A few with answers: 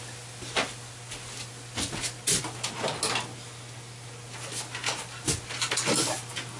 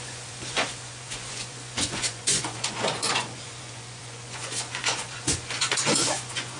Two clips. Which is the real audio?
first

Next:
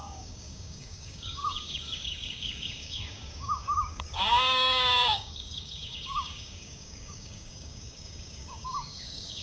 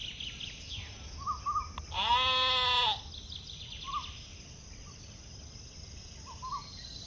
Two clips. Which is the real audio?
second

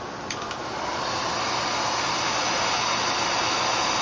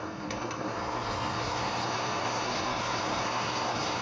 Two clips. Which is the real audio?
first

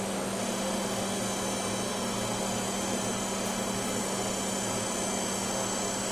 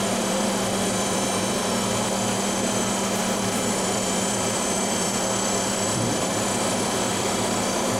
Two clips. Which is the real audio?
first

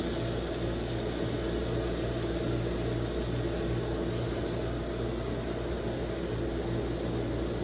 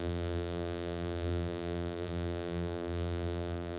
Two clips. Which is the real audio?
first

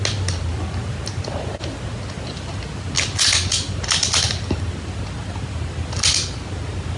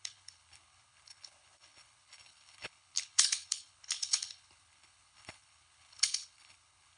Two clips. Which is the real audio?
first